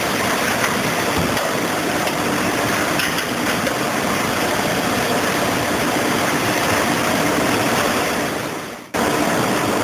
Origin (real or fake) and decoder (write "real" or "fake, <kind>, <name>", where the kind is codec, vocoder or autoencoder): fake, vocoder, BigVGAN v2